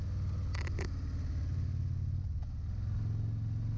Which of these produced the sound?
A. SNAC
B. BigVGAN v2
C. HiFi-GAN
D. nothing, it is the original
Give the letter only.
D